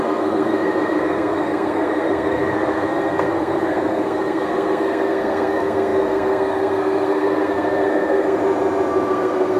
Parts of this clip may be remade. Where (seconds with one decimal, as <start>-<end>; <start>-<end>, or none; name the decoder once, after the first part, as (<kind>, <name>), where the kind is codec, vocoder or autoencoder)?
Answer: 0.0-8.4 (codec, SNAC); 9.1-9.6